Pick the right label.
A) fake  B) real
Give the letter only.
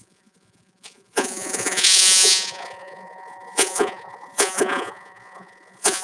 A